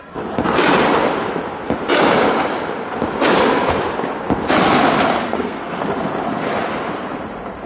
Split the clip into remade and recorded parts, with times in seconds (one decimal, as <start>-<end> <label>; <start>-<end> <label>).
0.0-5.2 recorded; 5.2-5.8 remade; 5.8-7.7 recorded